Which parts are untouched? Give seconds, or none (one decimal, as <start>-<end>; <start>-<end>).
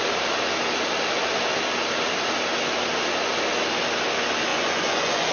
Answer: 0.0-4.5